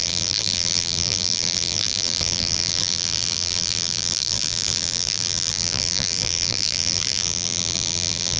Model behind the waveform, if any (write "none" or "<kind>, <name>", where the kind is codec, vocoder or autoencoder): vocoder, BigVGAN v2